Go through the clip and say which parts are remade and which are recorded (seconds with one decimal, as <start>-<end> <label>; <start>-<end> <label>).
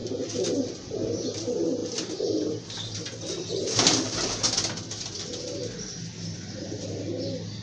0.0-7.6 recorded